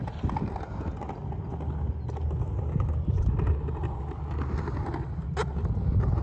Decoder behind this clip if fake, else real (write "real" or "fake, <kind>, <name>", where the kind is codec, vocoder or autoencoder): real